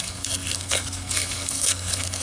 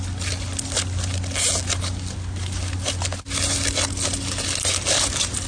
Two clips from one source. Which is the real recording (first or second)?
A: second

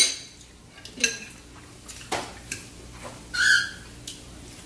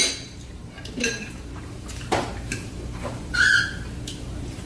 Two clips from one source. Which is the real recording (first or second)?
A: first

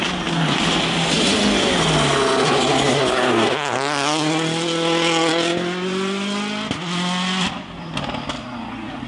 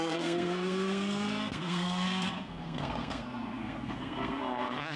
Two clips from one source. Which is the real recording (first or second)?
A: first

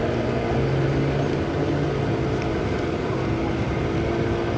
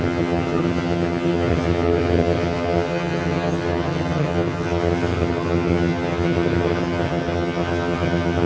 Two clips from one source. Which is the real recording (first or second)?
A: first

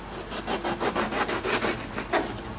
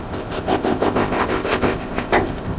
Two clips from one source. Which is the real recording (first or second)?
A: first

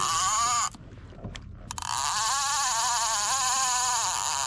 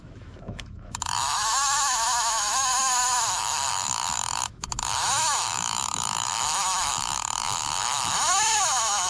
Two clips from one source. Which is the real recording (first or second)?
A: first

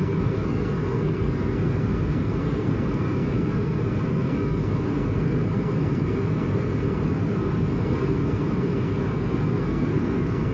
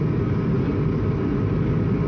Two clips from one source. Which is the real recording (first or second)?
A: second